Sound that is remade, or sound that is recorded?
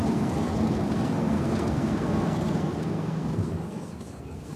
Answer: remade